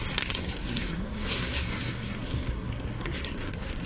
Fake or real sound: fake